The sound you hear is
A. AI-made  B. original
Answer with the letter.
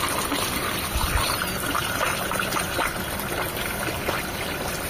B